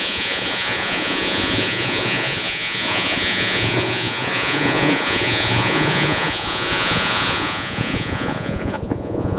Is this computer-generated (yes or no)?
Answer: yes